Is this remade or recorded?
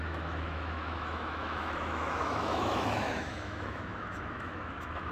remade